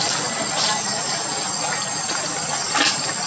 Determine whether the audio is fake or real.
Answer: real